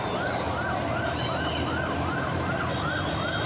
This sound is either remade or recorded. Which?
recorded